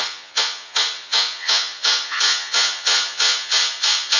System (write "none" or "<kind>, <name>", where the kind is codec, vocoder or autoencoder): vocoder, Vocos